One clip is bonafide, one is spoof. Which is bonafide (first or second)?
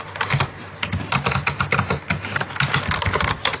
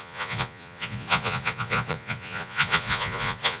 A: first